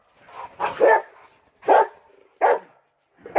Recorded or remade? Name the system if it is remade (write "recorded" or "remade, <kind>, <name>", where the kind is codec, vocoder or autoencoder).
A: remade, vocoder, BigVGAN v2